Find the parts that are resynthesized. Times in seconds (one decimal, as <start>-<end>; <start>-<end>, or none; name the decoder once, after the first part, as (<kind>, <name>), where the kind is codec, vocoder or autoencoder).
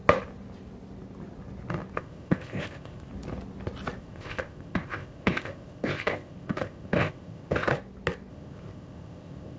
2.0-3.1 (codec, ZipCodec); 4.0-7.7; 8.3-9.6